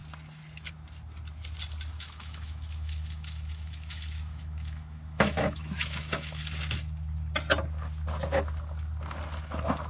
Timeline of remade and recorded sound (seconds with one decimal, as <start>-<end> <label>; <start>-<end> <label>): 0.0-1.9 recorded; 1.9-6.4 remade; 6.4-9.9 recorded